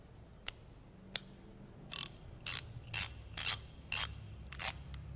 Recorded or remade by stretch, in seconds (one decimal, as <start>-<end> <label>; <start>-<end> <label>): 0.0-5.2 recorded

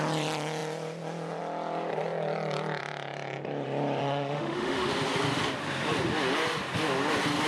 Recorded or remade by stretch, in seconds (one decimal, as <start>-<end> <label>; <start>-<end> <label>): 0.0-4.0 recorded; 4.0-4.9 remade; 4.9-7.5 recorded

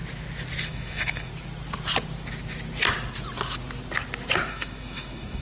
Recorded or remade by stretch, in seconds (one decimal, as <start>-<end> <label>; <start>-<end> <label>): 0.0-0.6 recorded; 0.6-1.3 remade; 1.3-4.5 recorded; 4.5-5.4 remade

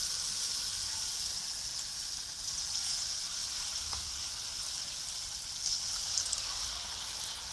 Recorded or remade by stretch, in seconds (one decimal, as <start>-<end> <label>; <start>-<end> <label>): 0.0-7.5 recorded